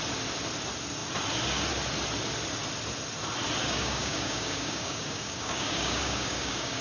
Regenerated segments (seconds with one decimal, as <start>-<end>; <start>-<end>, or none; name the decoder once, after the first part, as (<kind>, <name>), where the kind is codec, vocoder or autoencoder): 3.6-6.8 (codec, DAC)